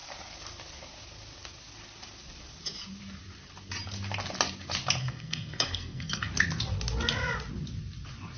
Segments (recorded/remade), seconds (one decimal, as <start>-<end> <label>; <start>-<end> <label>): 0.0-5.0 recorded; 5.0-6.3 remade; 6.3-8.4 recorded